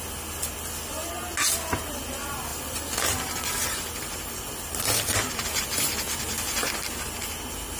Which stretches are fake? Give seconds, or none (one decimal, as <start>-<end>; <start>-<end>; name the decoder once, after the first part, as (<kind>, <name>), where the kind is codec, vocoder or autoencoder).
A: 2.5-5.3 (vocoder, BigVGAN v2)